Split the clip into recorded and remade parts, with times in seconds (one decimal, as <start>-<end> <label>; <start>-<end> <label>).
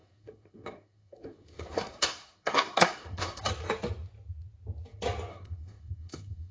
0.0-3.4 remade; 3.4-5.3 recorded; 5.3-6.5 remade